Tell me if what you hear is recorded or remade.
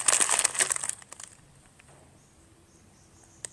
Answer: recorded